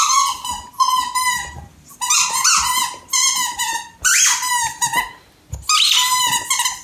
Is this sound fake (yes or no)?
no